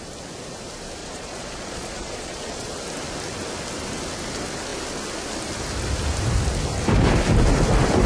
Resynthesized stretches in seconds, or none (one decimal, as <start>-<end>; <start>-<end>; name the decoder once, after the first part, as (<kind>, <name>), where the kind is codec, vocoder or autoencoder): 1.0-2.7 (vocoder, Vocos)